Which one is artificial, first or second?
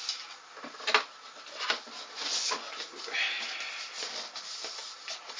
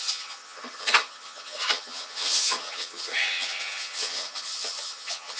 second